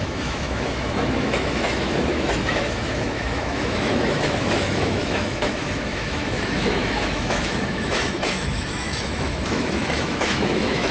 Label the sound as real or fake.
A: fake